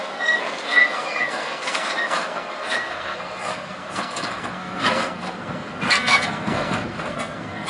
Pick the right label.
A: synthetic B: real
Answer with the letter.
A